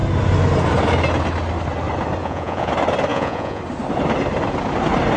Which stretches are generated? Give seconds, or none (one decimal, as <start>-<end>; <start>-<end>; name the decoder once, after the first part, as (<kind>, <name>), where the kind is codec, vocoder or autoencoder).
2.2-2.7 (vocoder, Vocos); 3.1-3.6